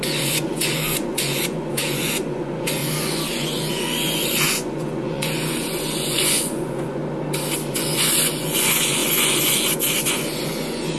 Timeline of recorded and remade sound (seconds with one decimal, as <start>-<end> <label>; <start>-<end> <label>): 0.0-7.0 remade; 7.0-7.7 recorded; 7.7-11.0 remade